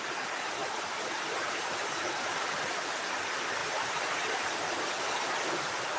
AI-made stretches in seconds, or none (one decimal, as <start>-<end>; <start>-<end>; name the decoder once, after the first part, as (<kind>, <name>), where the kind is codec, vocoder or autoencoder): 0.6-2.0 (vocoder, BigVGAN v2); 3.6-4.9